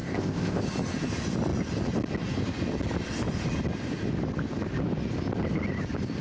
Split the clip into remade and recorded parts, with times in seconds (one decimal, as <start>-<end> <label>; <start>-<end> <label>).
0.0-0.6 remade; 0.6-6.2 recorded